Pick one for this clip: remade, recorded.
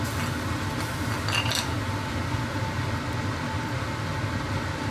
recorded